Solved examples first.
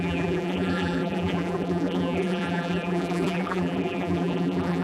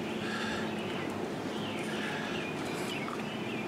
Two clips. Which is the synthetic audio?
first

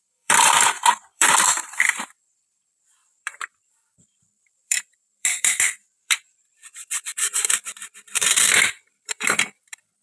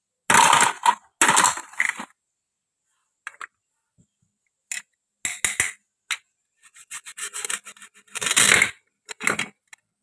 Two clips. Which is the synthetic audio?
first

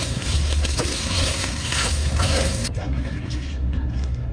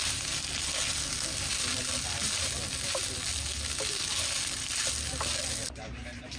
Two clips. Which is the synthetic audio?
first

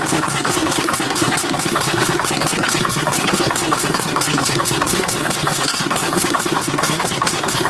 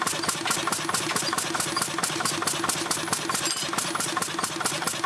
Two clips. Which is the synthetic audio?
first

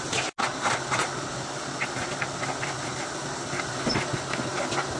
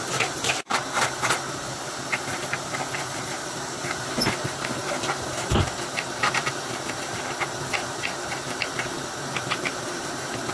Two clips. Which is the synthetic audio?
second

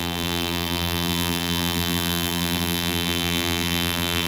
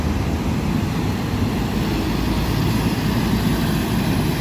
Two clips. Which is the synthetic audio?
first